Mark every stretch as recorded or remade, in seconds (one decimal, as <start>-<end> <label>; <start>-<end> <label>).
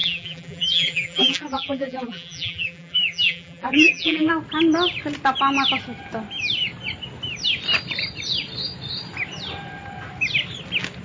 0.0-4.3 remade; 4.3-11.0 recorded